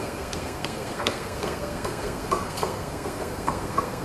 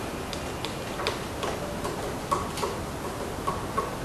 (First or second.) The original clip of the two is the second